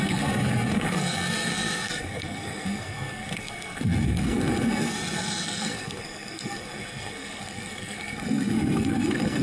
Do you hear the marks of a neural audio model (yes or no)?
yes